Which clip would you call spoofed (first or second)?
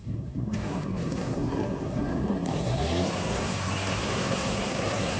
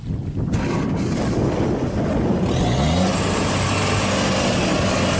first